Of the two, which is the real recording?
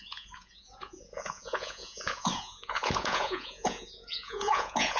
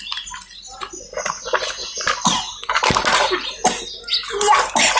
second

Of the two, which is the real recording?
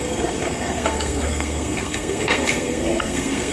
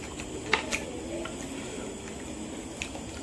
second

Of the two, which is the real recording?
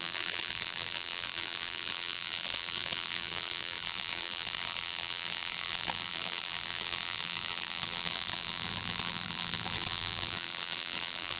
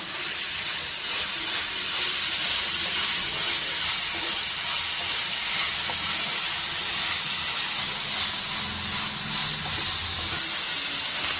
second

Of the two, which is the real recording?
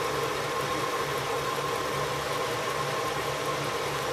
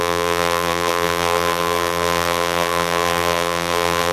first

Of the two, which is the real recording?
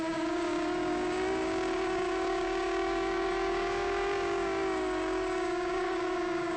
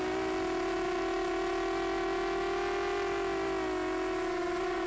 second